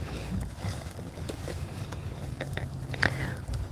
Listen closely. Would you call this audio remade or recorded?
remade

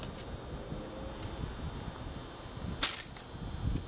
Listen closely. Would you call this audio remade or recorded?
recorded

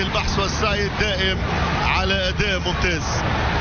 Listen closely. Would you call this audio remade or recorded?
recorded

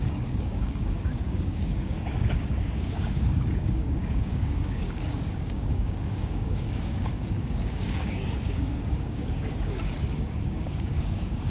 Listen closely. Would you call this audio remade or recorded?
remade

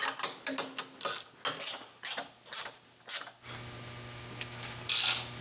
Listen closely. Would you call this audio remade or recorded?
recorded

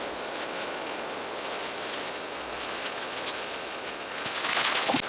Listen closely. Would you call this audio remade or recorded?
recorded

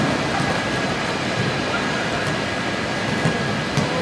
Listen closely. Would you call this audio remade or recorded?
recorded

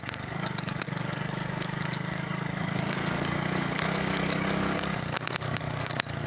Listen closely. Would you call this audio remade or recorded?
remade